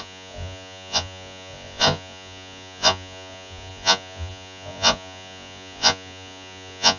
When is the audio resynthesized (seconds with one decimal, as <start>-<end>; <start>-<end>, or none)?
0.0-7.0